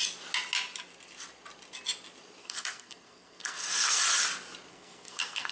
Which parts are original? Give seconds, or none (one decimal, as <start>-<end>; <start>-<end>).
0.0-2.4; 4.0-4.7